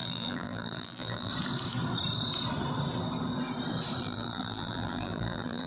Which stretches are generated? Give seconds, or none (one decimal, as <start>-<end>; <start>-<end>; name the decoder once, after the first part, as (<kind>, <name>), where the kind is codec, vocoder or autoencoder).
0.0-1.3 (vocoder, BigVGAN v2); 4.0-5.7